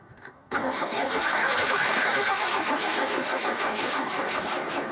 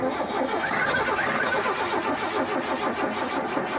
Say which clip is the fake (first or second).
first